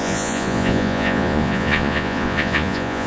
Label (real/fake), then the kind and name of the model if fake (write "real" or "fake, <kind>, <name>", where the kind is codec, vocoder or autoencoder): fake, vocoder, Vocos